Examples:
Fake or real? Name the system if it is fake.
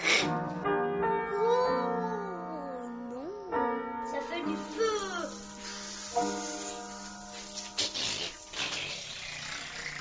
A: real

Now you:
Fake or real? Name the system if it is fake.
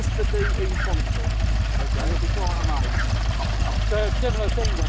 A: real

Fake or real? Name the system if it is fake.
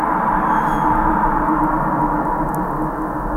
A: fake, vocoder, BigVGAN v2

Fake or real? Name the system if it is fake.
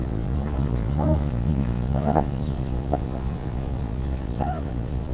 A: fake, vocoder, Vocos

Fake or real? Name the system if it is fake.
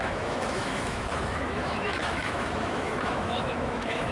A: fake, autoencoder, DAC-VAE